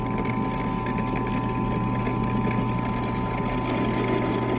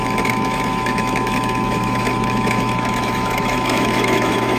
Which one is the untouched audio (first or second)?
first